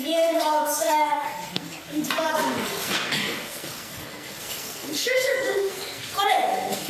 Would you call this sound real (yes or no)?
no